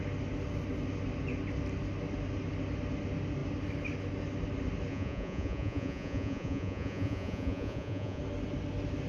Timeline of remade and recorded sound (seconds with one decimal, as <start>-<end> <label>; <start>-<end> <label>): 0.0-4.9 recorded; 4.9-8.2 remade; 8.2-9.1 recorded